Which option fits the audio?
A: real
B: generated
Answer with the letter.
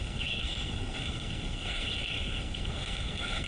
B